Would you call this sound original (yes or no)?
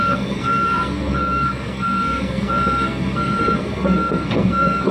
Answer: no